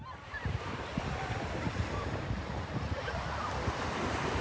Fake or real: fake